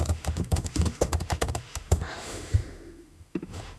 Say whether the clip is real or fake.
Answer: fake